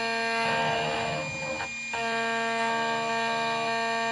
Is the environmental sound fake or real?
real